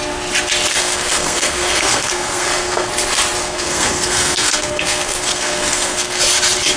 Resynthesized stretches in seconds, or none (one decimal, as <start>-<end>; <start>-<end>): 0.7-2.9; 3.4-6.2